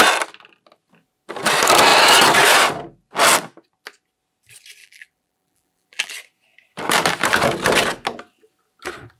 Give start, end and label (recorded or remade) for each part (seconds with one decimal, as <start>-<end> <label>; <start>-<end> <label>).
0.0-4.8 recorded; 4.8-6.1 remade; 6.1-9.2 recorded